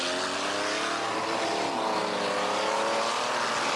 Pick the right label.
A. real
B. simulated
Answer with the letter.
A